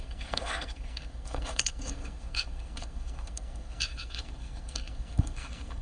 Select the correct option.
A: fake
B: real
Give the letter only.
A